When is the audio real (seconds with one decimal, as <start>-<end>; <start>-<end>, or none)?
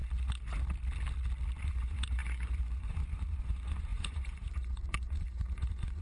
0.0-1.6